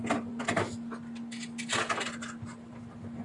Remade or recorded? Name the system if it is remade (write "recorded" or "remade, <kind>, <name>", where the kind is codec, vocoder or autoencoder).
recorded